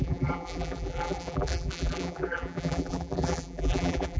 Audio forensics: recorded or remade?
remade